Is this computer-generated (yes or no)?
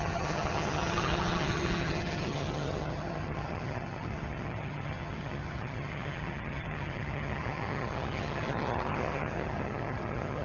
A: yes